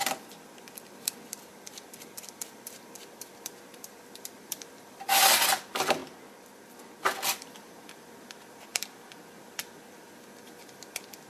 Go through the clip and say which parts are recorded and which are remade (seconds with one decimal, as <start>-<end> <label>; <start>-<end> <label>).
0.0-6.0 remade; 6.0-7.0 recorded; 7.0-11.3 remade